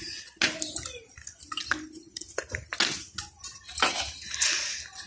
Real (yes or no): yes